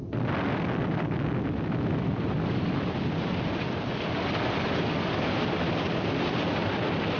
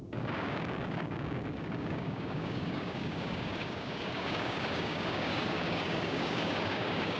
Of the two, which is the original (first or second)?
first